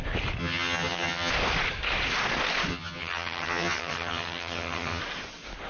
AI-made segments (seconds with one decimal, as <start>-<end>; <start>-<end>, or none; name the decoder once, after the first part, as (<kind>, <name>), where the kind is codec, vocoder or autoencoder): 0.4-1.3 (vocoder, HiFi-GAN); 2.7-5.0